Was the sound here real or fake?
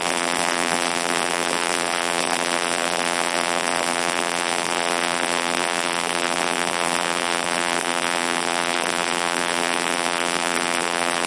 fake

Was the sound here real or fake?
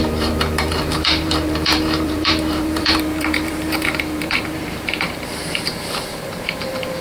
fake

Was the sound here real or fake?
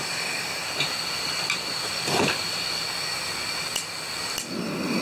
real